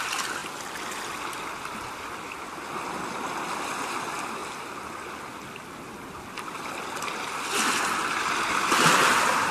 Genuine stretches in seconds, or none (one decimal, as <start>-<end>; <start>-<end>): 0.0-9.5